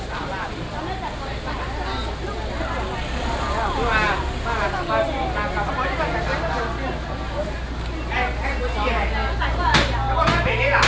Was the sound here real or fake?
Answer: real